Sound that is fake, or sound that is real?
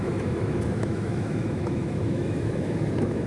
fake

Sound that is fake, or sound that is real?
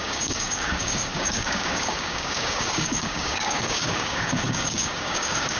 fake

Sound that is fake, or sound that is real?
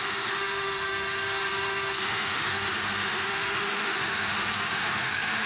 fake